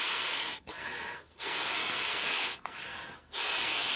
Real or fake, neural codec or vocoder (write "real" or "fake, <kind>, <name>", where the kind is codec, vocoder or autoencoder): fake, codec, SNAC